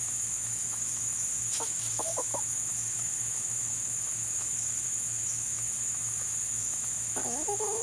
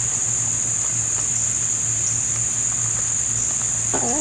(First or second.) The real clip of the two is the second